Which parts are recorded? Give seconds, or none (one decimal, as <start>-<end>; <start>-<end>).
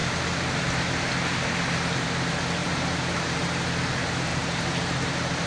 0.0-2.6; 3.7-4.3; 5.1-5.5